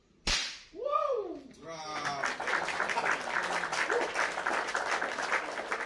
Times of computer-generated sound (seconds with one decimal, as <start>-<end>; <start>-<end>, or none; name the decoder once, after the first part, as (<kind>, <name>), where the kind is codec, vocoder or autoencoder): none